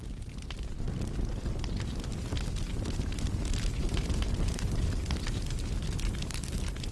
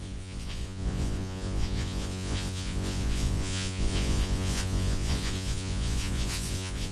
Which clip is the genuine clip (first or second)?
first